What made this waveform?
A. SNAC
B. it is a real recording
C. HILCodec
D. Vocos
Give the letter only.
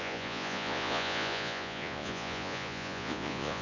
D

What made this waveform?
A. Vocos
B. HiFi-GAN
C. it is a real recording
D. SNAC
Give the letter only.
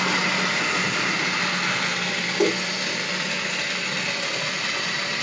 C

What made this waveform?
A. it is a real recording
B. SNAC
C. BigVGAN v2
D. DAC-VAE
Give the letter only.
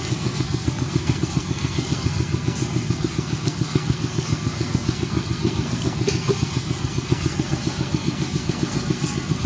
B